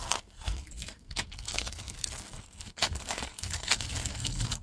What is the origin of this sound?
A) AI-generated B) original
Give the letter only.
A